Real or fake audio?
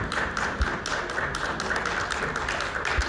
real